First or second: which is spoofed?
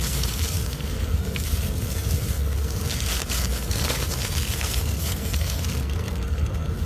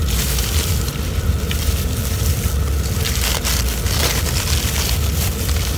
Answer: first